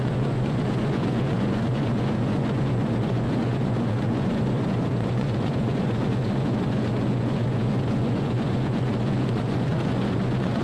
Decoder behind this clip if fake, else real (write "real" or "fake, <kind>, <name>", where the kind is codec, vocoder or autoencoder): fake, vocoder, Vocos